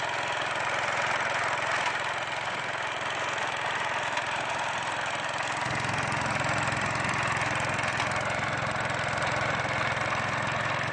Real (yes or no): yes